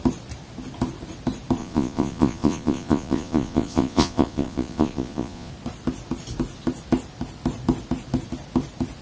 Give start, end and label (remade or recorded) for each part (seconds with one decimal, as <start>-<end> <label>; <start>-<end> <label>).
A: 0.0-1.6 recorded; 1.6-5.5 remade; 5.5-9.0 recorded